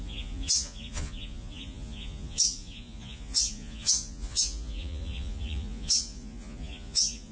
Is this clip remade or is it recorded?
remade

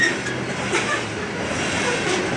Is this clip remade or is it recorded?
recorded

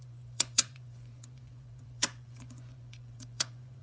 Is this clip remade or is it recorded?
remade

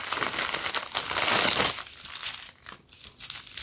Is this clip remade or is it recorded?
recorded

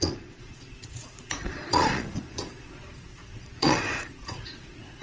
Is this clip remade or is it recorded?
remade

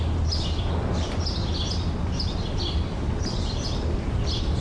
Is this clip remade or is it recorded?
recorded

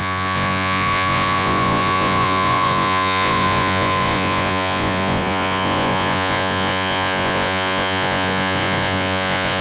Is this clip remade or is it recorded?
remade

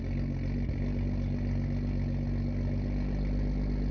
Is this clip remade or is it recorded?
recorded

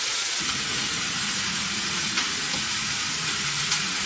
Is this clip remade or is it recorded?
remade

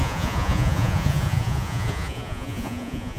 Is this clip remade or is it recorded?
remade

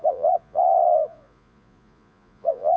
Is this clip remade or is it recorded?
remade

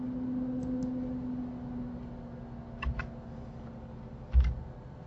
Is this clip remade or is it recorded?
recorded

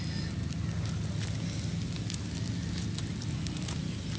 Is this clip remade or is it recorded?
recorded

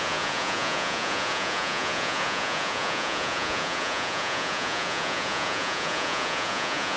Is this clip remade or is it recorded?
remade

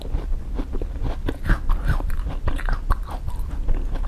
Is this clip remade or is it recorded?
recorded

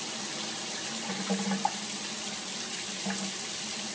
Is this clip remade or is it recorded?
recorded